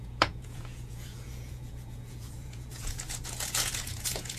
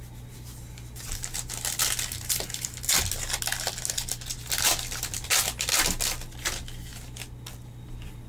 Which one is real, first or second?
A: second